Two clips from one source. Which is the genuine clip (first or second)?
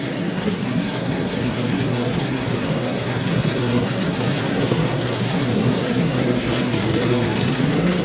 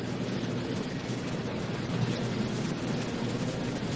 second